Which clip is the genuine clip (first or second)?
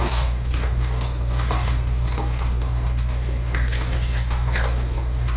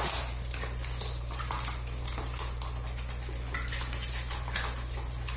second